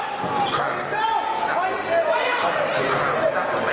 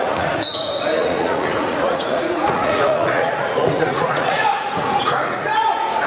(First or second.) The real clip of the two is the first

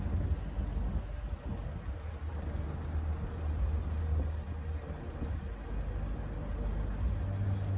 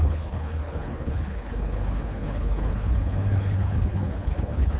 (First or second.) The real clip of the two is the first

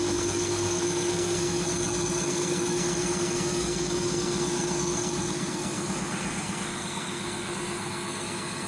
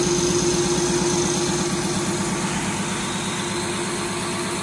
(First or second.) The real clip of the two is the second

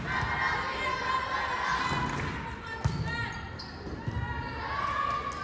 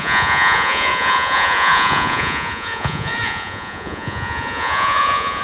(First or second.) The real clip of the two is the first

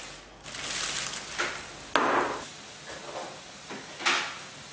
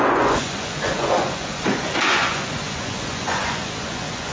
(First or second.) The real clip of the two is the first